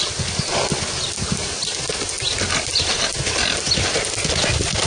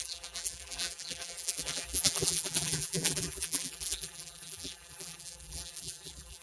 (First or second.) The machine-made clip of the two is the second